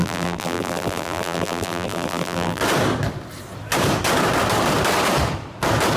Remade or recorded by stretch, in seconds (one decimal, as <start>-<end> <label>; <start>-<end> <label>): 0.0-2.6 remade; 2.6-6.0 recorded